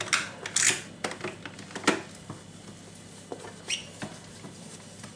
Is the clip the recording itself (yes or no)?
yes